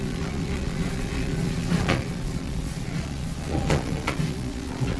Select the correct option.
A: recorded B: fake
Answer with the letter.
B